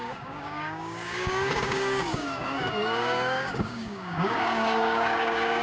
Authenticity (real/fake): fake